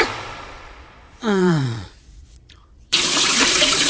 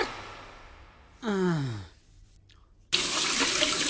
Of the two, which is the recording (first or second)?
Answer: second